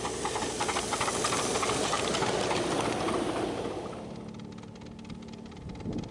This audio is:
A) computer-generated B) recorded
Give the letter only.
B